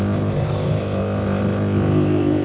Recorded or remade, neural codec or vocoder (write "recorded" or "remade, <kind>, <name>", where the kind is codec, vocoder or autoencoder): remade, codec, ZipCodec